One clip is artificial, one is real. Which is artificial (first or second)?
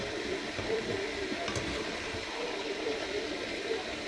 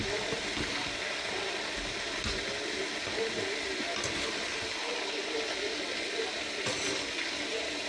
first